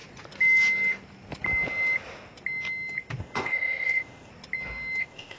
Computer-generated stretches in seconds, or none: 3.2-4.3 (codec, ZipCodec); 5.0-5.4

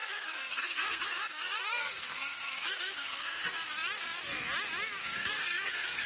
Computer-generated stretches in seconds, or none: 0.0-3.7 (codec, SNAC); 5.0-6.1

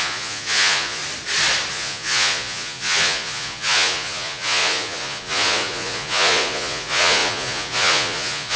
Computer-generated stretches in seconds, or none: 0.0-1.0 (vocoder, Vocos); 1.7-8.6

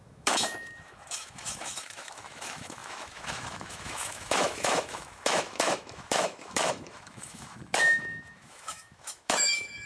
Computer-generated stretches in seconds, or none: 0.0-9.9 (autoencoder, DAC-VAE)

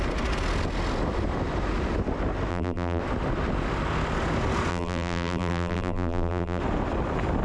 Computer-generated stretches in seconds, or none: 2.5-3.0 (vocoder, BigVGAN v2); 4.7-6.6

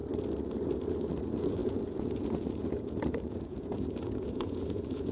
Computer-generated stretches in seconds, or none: 0.8-5.1 (vocoder, Vocos)

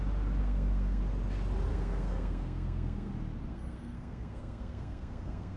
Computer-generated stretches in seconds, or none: 0.4-1.0 (codec, SNAC); 1.7-3.1; 3.5-5.6